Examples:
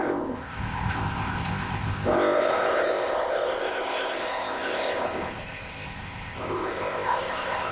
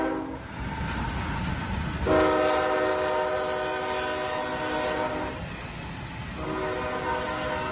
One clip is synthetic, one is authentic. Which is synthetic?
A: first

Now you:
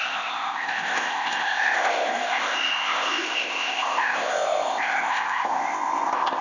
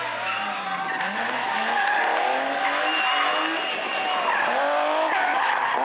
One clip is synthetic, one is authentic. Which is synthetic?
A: first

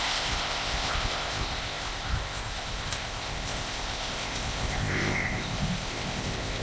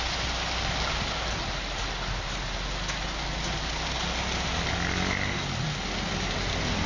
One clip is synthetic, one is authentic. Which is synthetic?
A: first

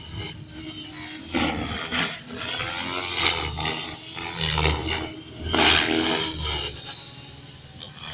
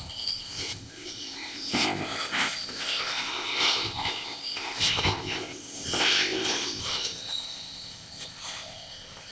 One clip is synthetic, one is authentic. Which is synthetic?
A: second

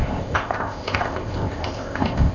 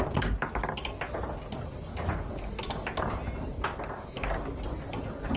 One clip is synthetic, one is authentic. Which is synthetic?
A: first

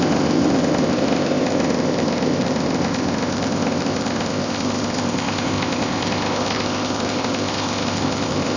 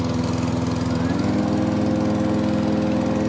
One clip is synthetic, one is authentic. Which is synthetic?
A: first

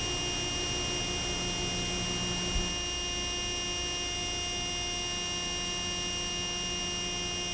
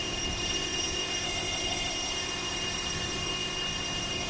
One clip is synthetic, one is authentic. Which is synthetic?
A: second